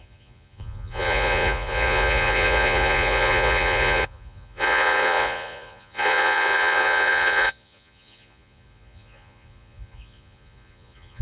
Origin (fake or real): fake